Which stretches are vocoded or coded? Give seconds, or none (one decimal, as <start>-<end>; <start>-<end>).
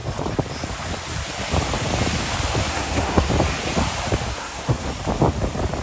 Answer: 2.7-3.3; 4.3-4.9